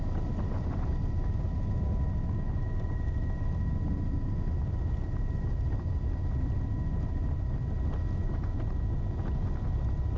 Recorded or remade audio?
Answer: recorded